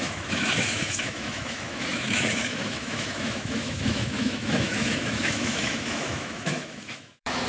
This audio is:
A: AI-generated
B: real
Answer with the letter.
A